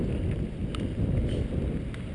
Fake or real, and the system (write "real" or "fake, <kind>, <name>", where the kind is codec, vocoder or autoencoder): real